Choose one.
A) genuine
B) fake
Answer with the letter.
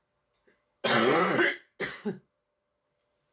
A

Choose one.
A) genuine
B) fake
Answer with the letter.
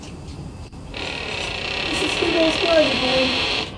B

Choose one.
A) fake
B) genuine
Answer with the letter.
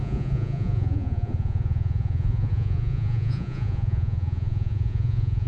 A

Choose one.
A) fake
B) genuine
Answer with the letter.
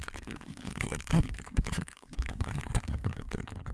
A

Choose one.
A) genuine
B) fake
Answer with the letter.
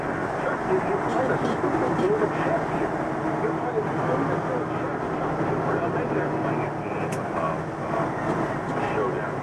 A